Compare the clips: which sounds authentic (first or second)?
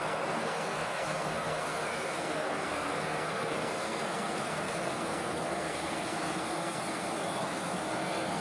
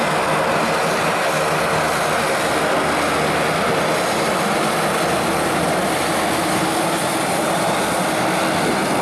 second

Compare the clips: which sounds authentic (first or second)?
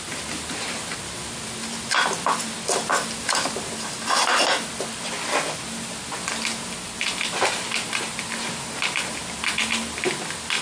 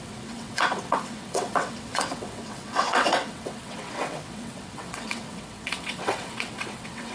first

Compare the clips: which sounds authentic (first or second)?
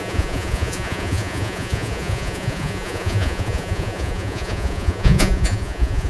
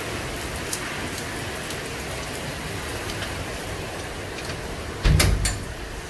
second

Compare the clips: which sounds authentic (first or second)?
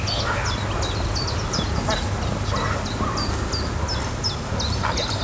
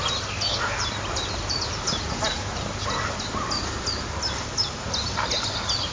first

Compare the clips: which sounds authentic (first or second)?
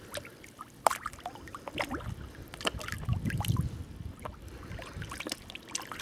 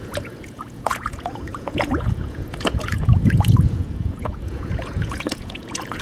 first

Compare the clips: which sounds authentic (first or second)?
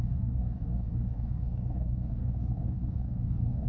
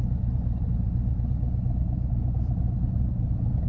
second